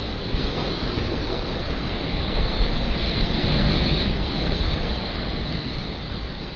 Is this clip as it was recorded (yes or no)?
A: no